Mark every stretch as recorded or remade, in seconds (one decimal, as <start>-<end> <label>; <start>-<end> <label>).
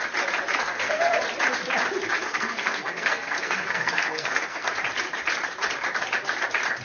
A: 0.0-0.5 recorded; 0.5-1.1 remade; 1.1-2.2 recorded; 2.2-4.7 remade; 4.7-6.8 recorded